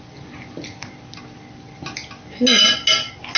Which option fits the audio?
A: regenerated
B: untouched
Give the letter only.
B